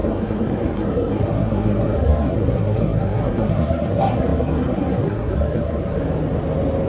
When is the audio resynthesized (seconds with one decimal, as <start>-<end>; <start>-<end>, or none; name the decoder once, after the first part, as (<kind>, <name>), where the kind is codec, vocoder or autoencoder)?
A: 0.0-6.0 (codec, SNAC)